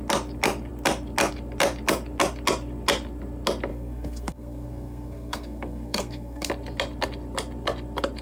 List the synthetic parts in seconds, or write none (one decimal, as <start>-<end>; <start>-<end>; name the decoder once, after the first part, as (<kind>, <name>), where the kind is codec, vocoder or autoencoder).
3.7-6.5 (codec, SNAC)